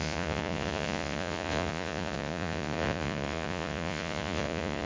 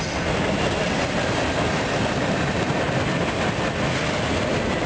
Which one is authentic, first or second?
second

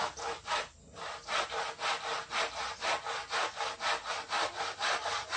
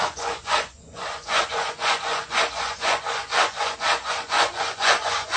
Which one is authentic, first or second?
first